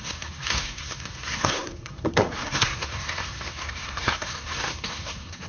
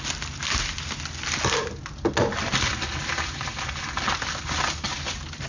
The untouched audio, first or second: second